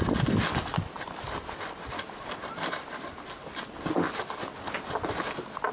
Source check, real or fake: real